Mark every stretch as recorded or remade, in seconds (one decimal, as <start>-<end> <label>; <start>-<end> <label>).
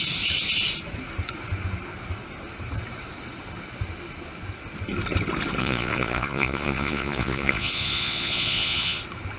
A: 0.0-5.6 recorded; 5.6-9.0 remade; 9.0-9.4 recorded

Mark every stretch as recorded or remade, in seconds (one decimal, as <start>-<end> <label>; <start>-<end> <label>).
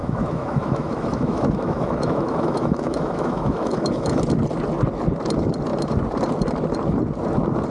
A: 0.0-4.2 remade; 4.2-7.7 recorded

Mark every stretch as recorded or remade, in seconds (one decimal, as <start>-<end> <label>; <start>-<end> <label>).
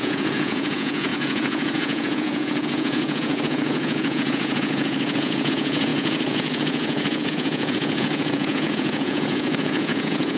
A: 0.0-10.4 remade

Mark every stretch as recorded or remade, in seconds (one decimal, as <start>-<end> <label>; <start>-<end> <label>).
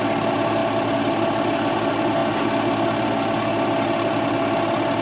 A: 0.0-5.0 recorded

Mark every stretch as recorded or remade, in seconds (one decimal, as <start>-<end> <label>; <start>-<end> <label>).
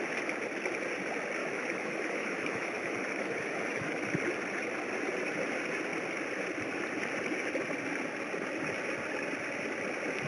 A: 0.0-1.4 recorded; 1.4-4.0 remade; 4.0-10.3 recorded